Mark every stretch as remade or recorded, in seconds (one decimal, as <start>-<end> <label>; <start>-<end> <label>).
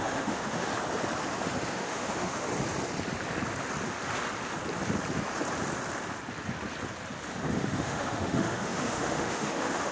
0.0-0.7 remade; 0.7-1.7 recorded; 1.7-2.5 remade; 2.5-7.5 recorded; 7.5-9.9 remade